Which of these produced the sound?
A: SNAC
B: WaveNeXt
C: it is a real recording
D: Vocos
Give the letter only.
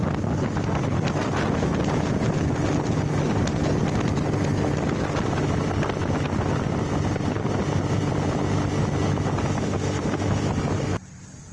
C